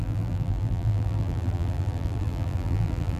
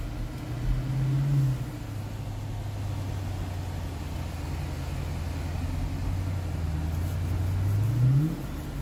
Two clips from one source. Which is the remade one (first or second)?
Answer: first